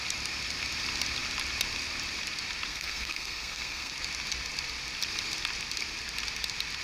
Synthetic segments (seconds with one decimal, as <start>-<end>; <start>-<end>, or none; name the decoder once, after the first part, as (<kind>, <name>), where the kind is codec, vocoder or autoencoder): 2.7-3.9 (codec, SNAC)